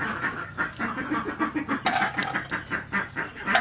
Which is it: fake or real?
real